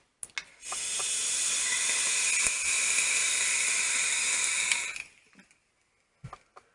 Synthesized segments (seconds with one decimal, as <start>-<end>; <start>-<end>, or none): none